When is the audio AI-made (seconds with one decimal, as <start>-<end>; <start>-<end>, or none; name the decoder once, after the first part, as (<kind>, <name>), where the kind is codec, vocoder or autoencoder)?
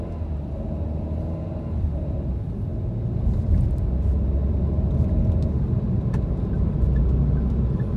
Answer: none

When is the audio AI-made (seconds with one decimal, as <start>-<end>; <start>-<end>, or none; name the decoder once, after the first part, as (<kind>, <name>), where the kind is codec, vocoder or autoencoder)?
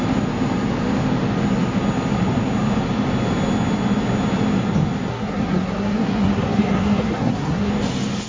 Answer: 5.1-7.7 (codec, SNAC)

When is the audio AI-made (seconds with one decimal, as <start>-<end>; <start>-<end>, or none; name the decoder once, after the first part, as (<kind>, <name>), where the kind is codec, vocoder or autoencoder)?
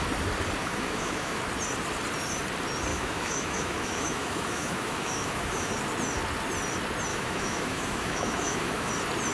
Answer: 0.6-1.4 (autoencoder, DAC-VAE); 2.9-5.7; 7.1-8.9